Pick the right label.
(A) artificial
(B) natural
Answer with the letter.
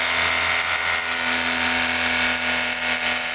B